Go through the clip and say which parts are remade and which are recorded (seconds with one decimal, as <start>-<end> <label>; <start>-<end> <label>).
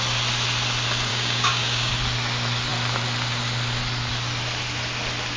0.0-1.1 recorded; 1.1-1.9 remade; 1.9-5.4 recorded